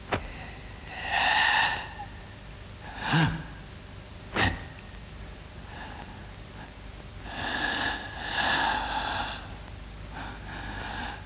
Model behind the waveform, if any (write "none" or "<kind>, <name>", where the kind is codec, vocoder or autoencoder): none